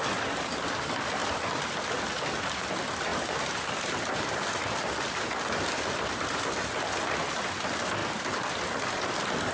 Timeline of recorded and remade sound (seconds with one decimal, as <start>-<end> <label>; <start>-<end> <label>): 0.0-8.0 recorded; 8.0-8.6 remade; 8.6-9.5 recorded